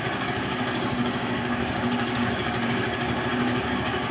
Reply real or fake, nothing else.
fake